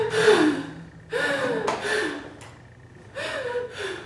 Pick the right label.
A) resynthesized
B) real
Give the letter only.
B